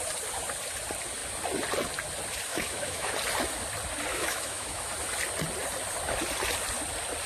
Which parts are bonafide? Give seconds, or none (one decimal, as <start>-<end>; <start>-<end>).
0.0-2.5; 3.1-4.1; 4.9-7.3